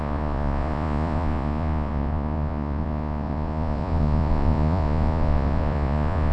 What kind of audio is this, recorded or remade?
remade